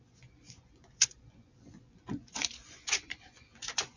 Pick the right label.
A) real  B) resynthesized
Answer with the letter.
B